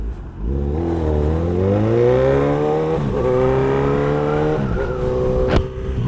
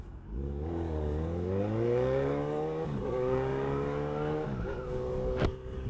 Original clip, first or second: first